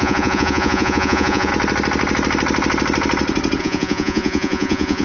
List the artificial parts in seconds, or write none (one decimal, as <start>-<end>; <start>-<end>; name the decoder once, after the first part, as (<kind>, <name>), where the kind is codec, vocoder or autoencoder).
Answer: 0.0-1.5 (vocoder, Vocos); 3.6-5.0